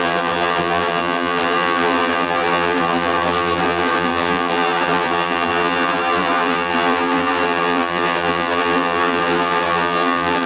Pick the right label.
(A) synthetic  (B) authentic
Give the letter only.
A